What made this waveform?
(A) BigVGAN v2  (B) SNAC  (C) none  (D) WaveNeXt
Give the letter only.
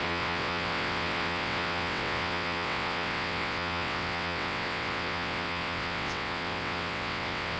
D